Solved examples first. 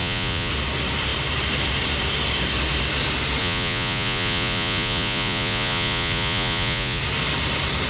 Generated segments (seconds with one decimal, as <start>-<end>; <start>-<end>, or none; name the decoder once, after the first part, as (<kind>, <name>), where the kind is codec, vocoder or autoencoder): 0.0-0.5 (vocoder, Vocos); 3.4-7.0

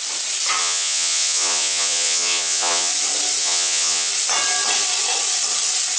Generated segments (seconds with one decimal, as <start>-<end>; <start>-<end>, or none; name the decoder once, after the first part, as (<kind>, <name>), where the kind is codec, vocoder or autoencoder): 0.6-2.9 (vocoder, Vocos); 3.4-4.1

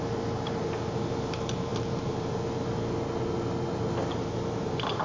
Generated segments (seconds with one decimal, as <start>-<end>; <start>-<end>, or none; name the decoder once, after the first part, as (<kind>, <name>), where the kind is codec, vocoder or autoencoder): none

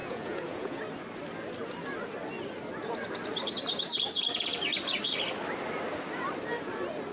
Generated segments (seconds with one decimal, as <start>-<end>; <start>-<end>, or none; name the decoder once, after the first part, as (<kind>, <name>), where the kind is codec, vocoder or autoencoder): 0.0-0.8 (vocoder, Vocos)

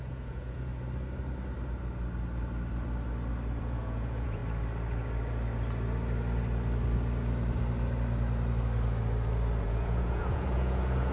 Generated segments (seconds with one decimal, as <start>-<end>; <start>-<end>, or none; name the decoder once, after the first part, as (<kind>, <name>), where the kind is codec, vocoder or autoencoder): 0.0-0.7 (vocoder, Vocos); 3.6-4.4; 9.6-11.1

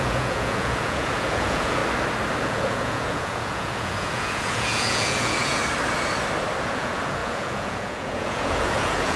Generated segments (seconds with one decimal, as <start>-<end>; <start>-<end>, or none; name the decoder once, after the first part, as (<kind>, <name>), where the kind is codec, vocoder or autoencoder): 0.0-1.8 (vocoder, Vocos); 2.4-5.6; 6.6-9.2

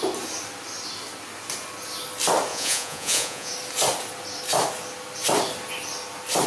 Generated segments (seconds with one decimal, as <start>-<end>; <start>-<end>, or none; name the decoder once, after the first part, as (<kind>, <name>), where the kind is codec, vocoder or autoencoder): 2.5-3.5 (vocoder, Vocos)